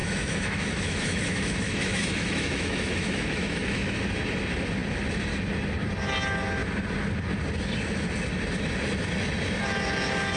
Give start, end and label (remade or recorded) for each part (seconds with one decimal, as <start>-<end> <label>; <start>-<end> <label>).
0.0-4.0 remade; 4.0-10.4 recorded